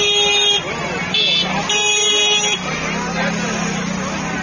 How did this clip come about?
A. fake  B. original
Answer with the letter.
B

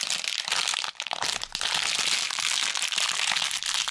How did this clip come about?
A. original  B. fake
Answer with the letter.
A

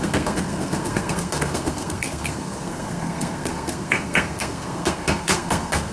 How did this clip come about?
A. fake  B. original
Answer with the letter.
A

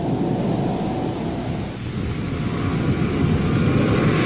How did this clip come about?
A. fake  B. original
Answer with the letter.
B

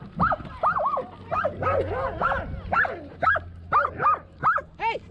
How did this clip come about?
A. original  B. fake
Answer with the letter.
A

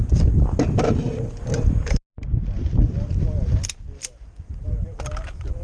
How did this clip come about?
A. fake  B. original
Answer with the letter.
B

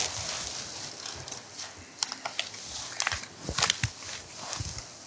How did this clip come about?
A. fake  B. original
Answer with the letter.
B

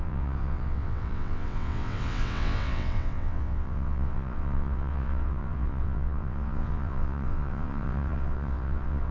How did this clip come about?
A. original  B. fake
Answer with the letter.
B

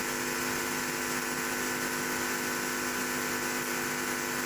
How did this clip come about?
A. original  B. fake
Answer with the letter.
A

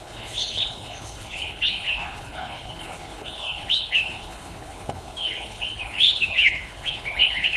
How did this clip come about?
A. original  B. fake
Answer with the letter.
B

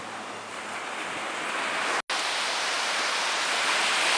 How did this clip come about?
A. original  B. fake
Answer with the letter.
A